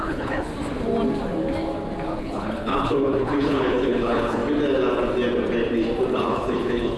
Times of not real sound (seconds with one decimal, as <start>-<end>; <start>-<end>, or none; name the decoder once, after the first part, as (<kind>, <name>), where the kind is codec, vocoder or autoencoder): 0.0-0.5 (codec, HILCodec); 2.2-4.4; 6.1-7.0